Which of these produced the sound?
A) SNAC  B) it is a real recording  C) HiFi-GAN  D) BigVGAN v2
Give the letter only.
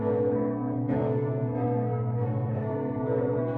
A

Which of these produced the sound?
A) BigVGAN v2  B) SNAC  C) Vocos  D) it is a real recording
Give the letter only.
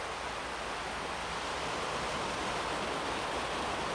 D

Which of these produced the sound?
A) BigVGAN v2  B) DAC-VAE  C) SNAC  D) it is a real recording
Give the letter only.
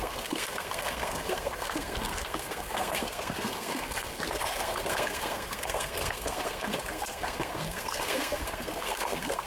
C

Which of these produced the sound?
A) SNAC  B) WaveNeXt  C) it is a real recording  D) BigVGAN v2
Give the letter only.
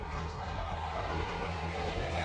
A